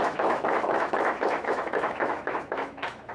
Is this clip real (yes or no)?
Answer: no